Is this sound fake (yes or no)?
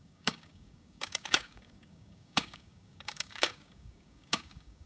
yes